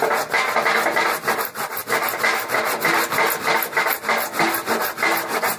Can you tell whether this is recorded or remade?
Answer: recorded